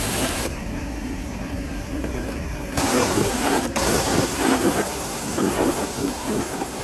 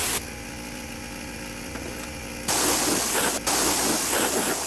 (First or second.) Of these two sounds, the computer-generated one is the first